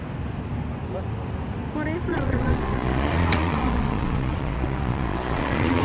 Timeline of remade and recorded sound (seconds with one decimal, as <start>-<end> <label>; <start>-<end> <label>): 0.0-2.1 recorded; 2.1-5.8 remade